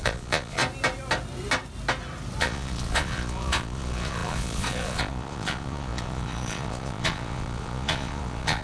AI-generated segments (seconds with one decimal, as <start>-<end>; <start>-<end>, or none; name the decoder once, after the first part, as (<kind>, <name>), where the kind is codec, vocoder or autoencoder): 0.0-0.6 (vocoder, Vocos); 2.4-8.6